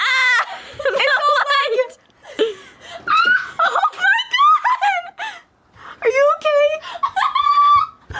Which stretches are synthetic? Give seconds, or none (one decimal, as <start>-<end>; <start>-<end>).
none